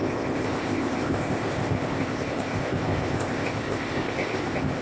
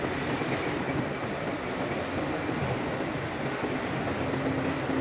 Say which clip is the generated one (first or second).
first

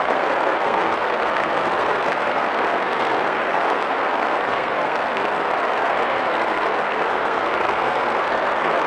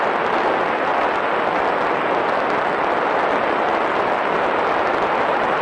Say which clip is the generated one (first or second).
first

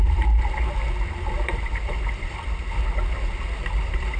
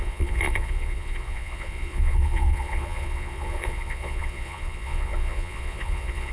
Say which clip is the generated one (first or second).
second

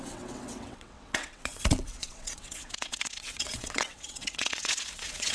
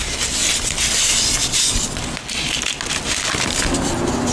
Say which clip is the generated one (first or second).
first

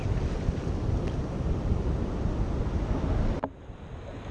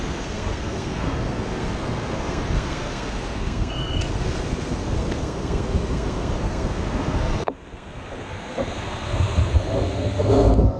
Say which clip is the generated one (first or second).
second